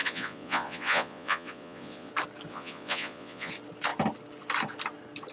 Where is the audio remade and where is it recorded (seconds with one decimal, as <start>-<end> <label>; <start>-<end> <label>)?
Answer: 0.0-2.1 remade; 2.1-2.5 recorded; 2.5-3.5 remade; 3.5-5.3 recorded